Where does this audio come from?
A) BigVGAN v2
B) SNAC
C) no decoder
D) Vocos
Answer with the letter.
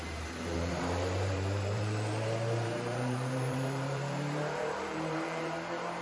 A